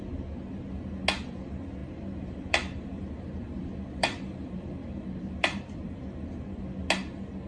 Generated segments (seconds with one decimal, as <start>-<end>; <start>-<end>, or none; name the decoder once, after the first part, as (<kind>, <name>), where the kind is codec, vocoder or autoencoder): 1.8-6.3 (vocoder, BigVGAN v2)